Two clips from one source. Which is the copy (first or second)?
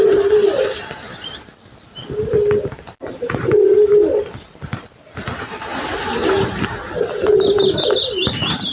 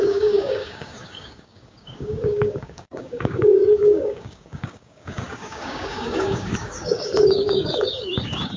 second